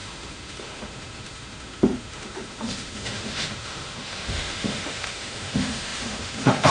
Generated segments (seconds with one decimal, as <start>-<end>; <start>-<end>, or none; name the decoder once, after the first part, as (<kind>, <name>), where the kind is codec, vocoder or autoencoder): 0.0-6.7 (autoencoder, DAC-VAE)